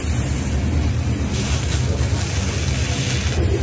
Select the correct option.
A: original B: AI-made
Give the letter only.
A